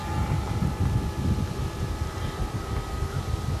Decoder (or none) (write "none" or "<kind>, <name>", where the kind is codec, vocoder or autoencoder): none